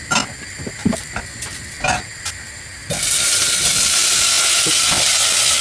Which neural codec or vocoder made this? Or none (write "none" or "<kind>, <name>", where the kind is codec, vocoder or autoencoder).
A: none